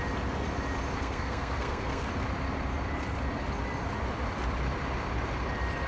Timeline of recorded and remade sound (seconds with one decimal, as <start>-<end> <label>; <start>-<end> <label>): 0.0-1.0 recorded; 1.0-2.1 remade; 2.1-5.9 recorded